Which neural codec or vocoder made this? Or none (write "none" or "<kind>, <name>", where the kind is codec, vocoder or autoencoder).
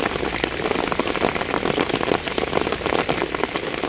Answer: none